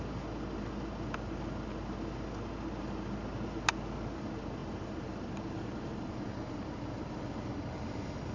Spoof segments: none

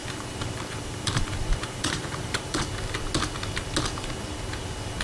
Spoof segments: 0.0-2.6 (vocoder, BigVGAN v2)

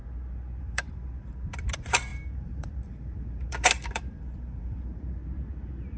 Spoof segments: 0.6-5.2 (vocoder, BigVGAN v2)

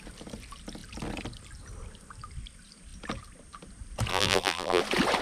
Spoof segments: 4.1-4.8 (vocoder, BigVGAN v2)